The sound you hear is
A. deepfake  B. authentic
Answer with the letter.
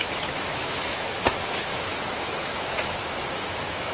A